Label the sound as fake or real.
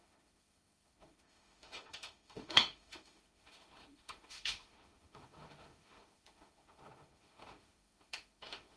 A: fake